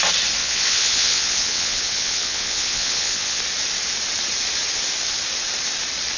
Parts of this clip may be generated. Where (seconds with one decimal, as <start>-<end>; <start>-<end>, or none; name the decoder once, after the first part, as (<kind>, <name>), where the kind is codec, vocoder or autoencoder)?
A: 0.4-3.4 (vocoder, WaveNeXt)

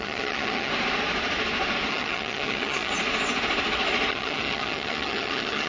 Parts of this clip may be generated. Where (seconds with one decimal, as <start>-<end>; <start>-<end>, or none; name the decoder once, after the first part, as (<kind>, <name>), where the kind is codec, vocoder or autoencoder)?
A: 0.0-0.7 (vocoder, HiFi-GAN); 1.9-2.9; 4.1-5.7

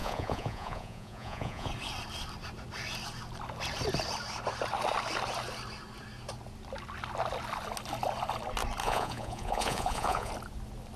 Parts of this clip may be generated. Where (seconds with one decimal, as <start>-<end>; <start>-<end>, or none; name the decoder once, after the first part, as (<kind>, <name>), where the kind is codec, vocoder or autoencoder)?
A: 0.0-1.7 (vocoder, Vocos); 8.8-10.3

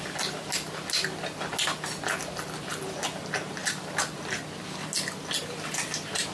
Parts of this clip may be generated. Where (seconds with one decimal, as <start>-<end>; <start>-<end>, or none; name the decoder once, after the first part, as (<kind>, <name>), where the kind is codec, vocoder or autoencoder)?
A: none

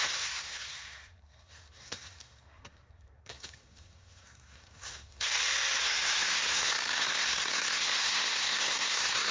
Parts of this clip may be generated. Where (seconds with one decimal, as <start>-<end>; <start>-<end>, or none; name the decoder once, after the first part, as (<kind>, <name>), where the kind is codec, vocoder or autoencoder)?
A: 0.0-5.3 (codec, SNAC); 5.8-9.3